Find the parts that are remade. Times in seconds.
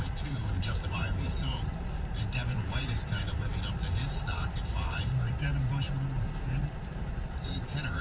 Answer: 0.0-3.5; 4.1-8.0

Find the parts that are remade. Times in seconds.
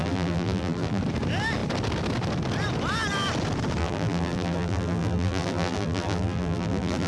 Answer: 0.0-1.0; 3.8-7.1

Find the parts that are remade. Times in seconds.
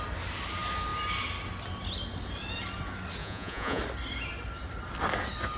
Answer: 3.2-3.8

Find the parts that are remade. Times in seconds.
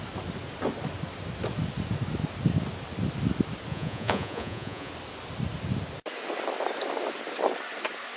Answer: 3.7-4.9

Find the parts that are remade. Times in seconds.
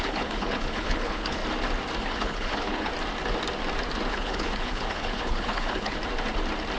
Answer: 0.0-1.4; 2.0-2.9; 4.1-6.0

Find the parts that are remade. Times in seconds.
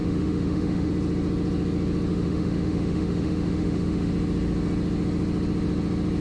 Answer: 0.0-0.9; 2.1-4.1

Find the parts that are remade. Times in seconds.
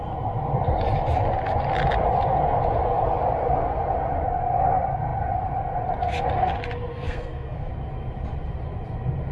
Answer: 6.9-7.7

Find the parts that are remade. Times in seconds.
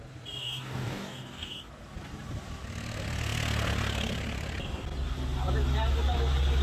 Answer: 0.4-1.7